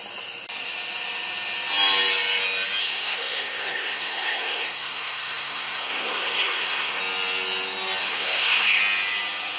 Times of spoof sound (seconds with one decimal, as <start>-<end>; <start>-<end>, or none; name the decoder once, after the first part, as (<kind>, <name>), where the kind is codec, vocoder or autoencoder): 2.8-7.0 (codec, SNAC); 8.0-8.8